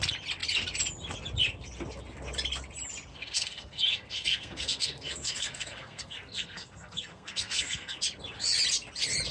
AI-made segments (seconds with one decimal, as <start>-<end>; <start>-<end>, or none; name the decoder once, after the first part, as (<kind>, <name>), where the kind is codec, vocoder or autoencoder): 3.1-8.0 (codec, SNAC)